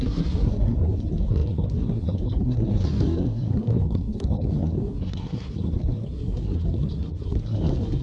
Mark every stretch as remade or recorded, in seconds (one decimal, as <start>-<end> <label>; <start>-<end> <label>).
0.0-8.0 remade